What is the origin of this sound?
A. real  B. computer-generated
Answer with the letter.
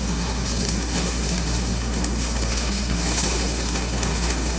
B